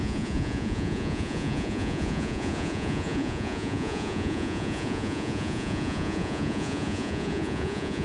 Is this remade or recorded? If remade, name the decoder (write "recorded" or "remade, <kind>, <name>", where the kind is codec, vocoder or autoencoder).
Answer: remade, vocoder, Vocos